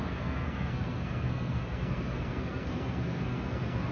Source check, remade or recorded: remade